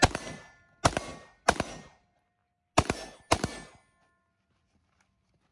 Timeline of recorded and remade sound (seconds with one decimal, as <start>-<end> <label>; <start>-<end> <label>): 0.0-5.5 recorded